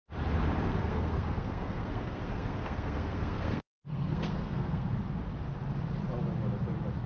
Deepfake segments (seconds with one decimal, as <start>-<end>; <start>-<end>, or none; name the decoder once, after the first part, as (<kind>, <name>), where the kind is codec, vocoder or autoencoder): 0.7-5.0 (codec, SNAC)